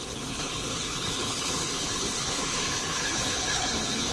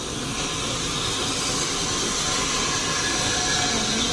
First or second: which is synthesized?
first